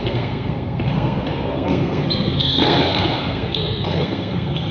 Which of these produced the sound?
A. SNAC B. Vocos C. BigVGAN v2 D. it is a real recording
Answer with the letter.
A